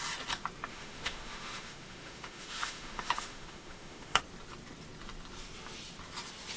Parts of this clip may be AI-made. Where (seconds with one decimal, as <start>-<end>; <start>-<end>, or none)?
0.7-4.2